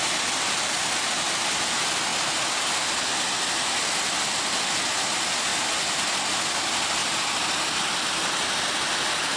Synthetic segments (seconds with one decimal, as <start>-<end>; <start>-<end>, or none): none